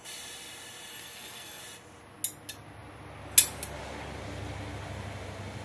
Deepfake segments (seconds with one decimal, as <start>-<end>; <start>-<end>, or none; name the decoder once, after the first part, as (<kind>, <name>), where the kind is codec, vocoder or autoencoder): 0.9-1.6 (codec, SNAC)